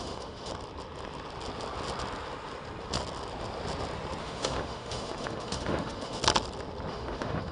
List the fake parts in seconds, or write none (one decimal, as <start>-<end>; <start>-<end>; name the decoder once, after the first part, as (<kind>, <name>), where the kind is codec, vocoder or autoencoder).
0.0-0.5 (autoencoder, DAC-VAE); 4.2-6.2; 6.9-7.5